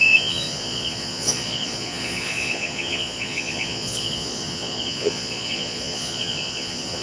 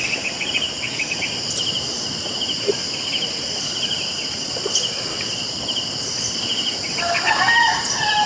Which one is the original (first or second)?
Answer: second